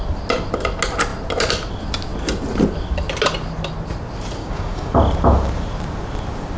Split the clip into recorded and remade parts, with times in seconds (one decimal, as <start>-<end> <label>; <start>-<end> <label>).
0.0-4.4 recorded; 4.4-4.9 remade; 4.9-6.6 recorded